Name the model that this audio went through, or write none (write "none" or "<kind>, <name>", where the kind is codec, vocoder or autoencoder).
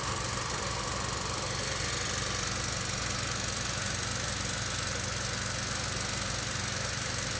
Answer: none